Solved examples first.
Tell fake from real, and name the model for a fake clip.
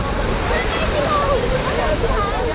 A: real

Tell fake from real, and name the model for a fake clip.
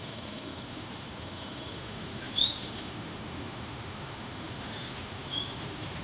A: fake, autoencoder, DAC-VAE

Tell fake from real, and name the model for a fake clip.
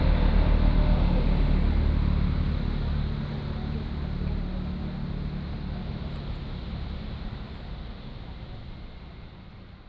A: real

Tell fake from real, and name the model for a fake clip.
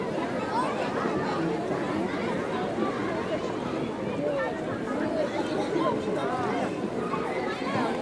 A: real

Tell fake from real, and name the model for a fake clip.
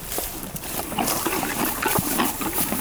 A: fake, vocoder, BigVGAN v2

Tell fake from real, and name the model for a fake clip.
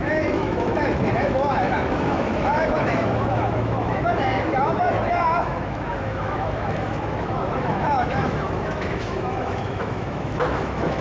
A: fake, autoencoder, DAC-VAE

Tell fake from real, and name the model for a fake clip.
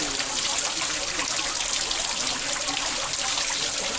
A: real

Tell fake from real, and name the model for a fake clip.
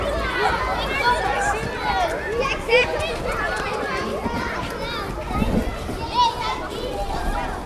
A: real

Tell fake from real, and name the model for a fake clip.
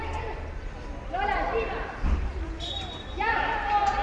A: real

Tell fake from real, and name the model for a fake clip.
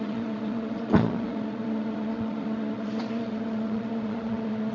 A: fake, vocoder, Vocos